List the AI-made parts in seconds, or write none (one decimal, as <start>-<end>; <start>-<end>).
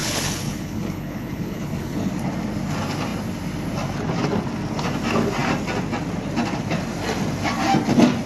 0.0-2.1